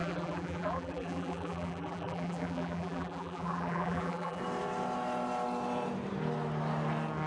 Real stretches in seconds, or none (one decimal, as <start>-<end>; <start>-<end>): 4.4-7.3